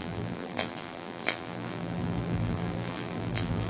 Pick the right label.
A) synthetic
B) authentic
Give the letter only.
A